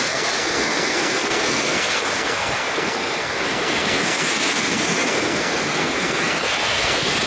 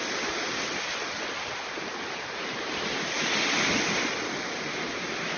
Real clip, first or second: second